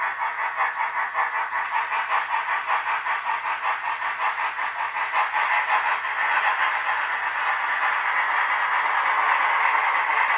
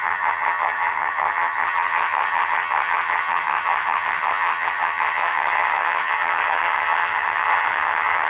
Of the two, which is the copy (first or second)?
second